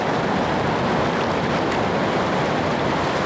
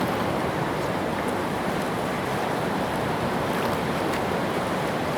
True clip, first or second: first